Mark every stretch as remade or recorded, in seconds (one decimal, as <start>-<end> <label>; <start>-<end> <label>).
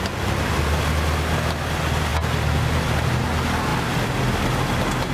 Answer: 0.0-3.7 recorded; 3.7-4.3 remade; 4.3-5.1 recorded